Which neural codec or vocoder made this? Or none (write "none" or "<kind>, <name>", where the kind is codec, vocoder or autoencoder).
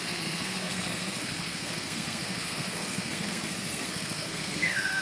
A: codec, SNAC